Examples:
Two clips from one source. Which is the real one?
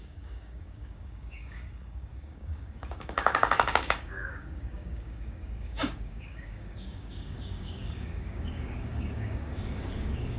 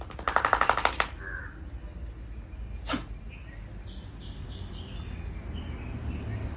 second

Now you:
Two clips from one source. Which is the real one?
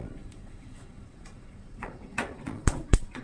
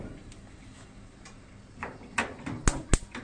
second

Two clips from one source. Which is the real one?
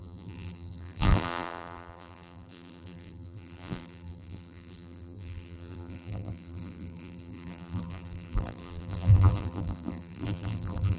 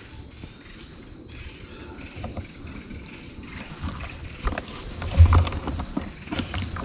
second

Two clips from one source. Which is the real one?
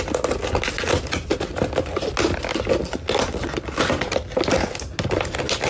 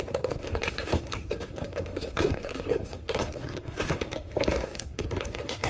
first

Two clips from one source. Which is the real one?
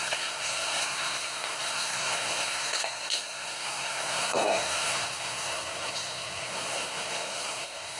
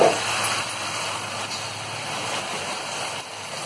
second